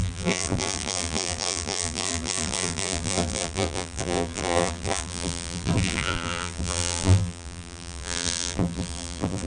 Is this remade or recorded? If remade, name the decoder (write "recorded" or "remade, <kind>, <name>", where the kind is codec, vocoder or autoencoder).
remade, vocoder, BigVGAN v2